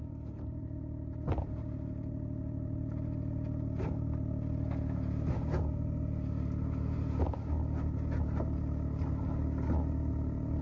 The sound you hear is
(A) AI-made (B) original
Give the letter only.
B